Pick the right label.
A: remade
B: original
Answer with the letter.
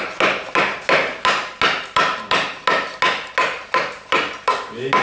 B